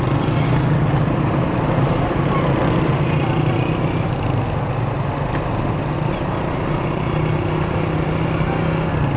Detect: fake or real real